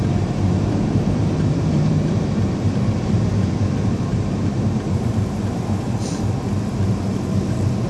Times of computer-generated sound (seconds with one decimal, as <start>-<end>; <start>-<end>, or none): 0.0-2.7; 4.1-5.4